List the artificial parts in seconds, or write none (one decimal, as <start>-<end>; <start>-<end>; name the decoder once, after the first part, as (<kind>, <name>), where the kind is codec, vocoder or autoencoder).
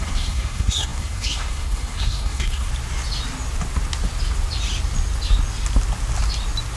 0.0-2.7 (codec, SNAC)